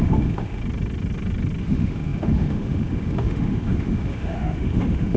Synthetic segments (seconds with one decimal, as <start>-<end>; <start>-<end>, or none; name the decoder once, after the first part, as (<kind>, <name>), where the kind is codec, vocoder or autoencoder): 0.0-0.6 (autoencoder, DAC-VAE); 1.6-5.2